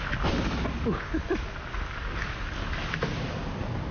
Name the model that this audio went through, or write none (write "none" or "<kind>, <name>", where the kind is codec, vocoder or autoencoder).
none